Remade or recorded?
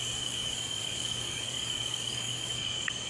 remade